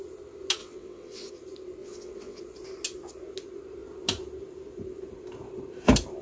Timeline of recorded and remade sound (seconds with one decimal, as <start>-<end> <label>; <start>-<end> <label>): 0.0-0.6 recorded; 0.6-1.3 remade; 1.3-1.8 recorded; 1.8-2.4 remade; 2.4-6.2 recorded